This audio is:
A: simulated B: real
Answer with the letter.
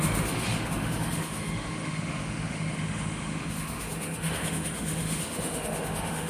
A